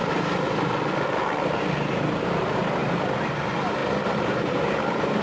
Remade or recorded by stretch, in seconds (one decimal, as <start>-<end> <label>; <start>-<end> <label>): 0.0-1.2 remade; 1.2-2.8 recorded; 2.8-3.4 remade; 3.4-3.8 recorded; 3.8-4.6 remade; 4.6-5.2 recorded